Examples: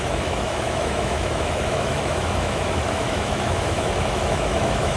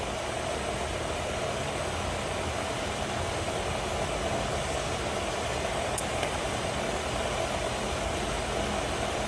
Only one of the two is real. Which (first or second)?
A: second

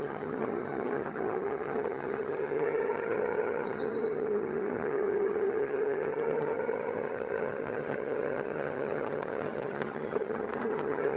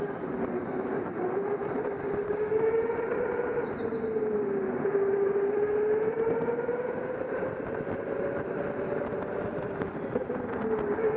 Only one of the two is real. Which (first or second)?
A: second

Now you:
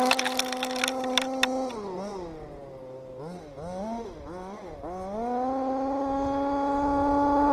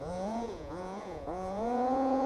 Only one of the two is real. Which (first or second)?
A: first